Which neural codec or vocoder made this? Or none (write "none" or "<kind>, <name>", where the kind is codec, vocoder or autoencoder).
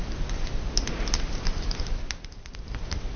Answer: none